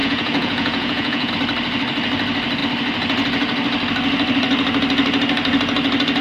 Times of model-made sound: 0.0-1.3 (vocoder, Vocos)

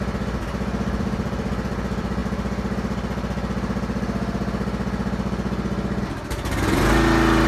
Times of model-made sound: none

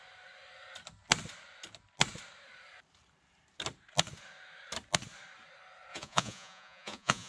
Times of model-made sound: 5.9-7.3 (vocoder, Vocos)

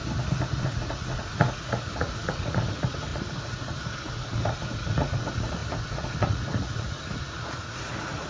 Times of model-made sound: 0.6-8.3 (vocoder, Vocos)

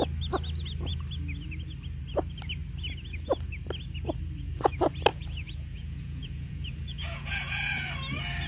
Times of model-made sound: 5.1-7.9 (vocoder, Vocos)

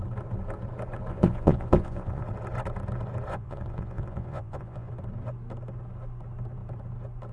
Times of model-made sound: 1.1-2.2 (vocoder, Vocos); 3.3-4.9